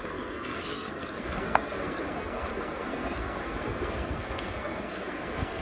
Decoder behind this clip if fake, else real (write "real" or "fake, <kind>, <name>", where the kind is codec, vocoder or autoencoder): fake, codec, SNAC